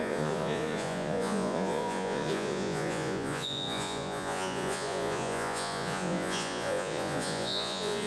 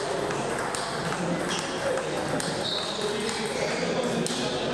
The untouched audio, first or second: second